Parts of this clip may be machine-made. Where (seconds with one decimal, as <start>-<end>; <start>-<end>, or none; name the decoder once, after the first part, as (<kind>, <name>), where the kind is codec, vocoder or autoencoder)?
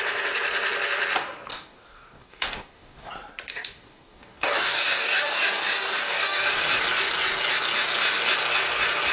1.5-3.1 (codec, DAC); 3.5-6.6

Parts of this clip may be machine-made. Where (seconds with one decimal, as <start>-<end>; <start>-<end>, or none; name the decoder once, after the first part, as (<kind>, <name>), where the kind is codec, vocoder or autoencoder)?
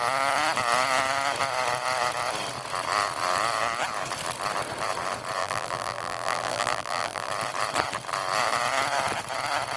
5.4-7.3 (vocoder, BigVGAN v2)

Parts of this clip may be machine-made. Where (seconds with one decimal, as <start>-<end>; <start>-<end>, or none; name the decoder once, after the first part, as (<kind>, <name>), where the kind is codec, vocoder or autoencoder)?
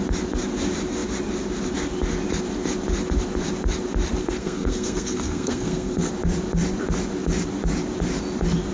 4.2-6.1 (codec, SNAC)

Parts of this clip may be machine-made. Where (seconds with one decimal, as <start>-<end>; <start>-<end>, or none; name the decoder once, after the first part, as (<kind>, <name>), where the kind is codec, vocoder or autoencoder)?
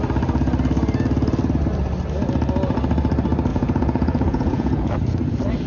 3.5-4.9 (vocoder, Vocos)